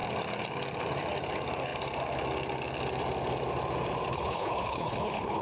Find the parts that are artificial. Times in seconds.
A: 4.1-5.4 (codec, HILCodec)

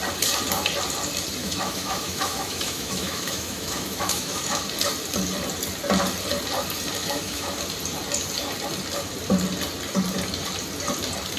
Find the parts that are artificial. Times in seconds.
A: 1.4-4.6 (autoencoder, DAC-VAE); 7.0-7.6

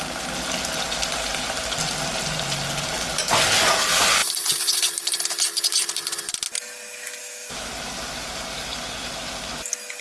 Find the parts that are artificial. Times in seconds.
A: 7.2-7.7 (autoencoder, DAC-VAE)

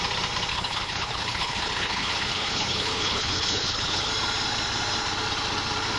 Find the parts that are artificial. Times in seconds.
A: 0.5-4.1 (codec, HILCodec)

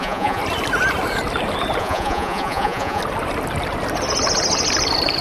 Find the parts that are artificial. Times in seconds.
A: 0.0-0.4 (vocoder, Vocos); 1.8-3.0

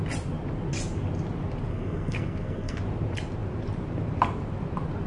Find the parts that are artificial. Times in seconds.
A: 1.7-2.8 (codec, SNAC)